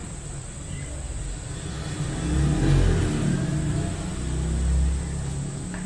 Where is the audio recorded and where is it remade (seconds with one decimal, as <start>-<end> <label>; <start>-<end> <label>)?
0.0-5.9 recorded